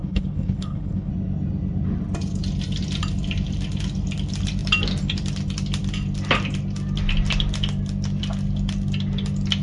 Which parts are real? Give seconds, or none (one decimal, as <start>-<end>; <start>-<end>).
1.1-9.6